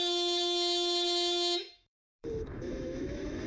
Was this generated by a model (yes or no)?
yes